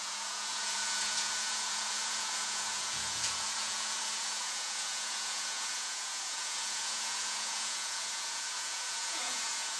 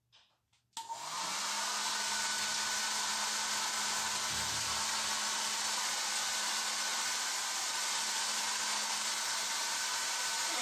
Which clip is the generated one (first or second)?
first